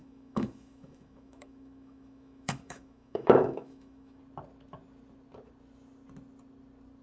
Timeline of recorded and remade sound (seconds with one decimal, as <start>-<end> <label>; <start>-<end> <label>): 0.0-4.2 remade; 4.2-7.0 recorded